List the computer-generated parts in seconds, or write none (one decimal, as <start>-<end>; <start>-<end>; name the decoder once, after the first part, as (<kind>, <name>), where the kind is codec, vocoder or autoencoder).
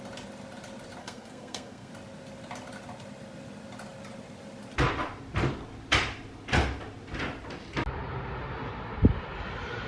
1.0-1.9 (codec, SNAC)